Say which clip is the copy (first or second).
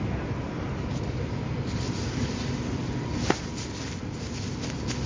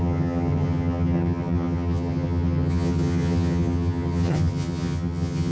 second